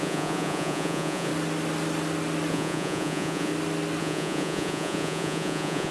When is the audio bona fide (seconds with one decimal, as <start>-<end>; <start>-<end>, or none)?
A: 1.3-2.5; 3.5-4.0